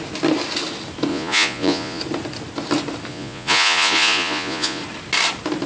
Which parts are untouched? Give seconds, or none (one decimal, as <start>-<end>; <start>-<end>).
0.0-1.1; 2.0-3.1; 4.8-5.7